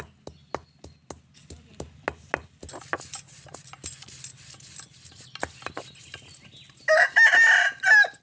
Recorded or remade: recorded